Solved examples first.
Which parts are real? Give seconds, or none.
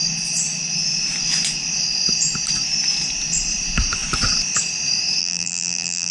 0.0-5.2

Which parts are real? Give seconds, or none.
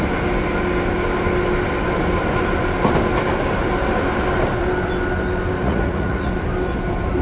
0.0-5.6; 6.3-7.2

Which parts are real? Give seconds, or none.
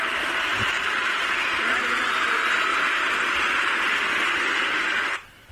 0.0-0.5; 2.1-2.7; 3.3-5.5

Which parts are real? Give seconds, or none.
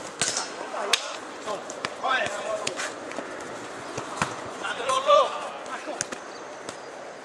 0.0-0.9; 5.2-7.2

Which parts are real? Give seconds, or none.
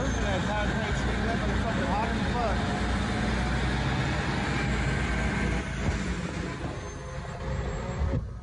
0.0-8.4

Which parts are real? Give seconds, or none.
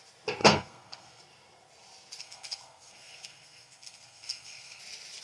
0.0-0.4; 1.2-2.2; 4.8-5.2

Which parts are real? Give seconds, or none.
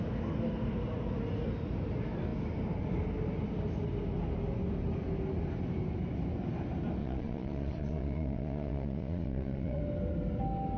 0.0-7.0; 9.8-10.8